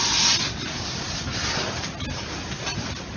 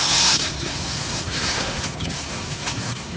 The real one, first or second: first